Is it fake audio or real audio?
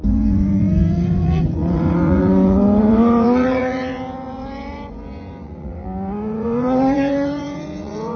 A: fake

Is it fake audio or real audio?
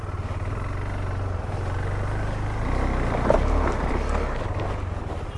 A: real